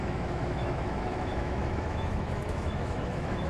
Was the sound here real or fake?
fake